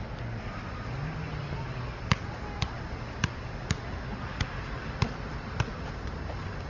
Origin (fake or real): real